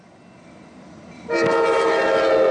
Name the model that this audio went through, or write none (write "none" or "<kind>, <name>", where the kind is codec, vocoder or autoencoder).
none